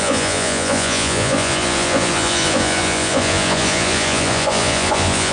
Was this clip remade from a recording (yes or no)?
yes